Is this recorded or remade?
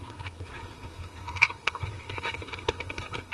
remade